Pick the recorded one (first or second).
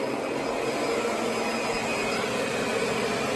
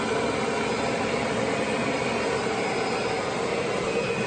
first